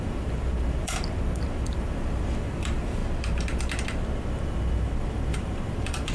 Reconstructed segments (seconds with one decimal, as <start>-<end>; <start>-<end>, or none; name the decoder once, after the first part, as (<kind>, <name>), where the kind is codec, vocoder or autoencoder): 0.0-3.0 (vocoder, BigVGAN v2); 4.3-6.1